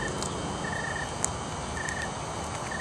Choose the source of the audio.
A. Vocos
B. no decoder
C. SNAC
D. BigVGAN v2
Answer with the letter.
B